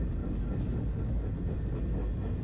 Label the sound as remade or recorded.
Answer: recorded